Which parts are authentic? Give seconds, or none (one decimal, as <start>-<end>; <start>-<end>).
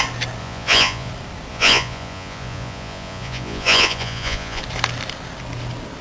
0.0-0.4; 1.1-1.5; 4.6-6.0